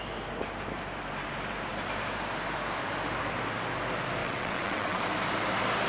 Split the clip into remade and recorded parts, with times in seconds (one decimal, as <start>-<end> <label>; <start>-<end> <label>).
0.0-4.2 recorded; 4.2-5.0 remade; 5.0-5.9 recorded